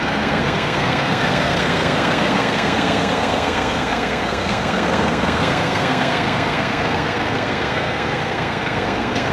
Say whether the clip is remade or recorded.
remade